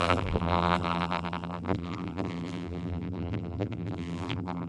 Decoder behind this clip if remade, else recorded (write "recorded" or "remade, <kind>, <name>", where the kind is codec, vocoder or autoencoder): remade, vocoder, BigVGAN v2